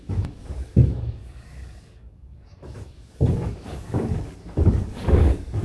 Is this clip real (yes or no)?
no